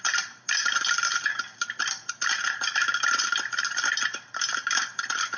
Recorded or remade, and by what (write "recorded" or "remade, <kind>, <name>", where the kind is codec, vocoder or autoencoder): remade, vocoder, BigVGAN v2